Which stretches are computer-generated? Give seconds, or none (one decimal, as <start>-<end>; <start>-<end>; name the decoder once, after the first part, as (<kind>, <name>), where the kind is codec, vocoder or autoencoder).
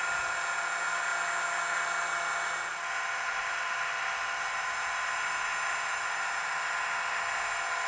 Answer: none